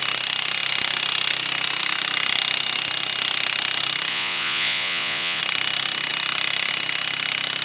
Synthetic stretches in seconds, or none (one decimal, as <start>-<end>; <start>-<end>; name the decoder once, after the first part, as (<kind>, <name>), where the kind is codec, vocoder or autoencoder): 4.1-5.4 (vocoder, Vocos)